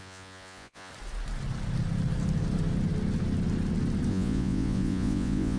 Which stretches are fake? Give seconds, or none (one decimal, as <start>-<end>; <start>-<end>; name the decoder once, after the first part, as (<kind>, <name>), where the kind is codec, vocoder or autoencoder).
0.0-0.9 (vocoder, Vocos); 4.1-5.6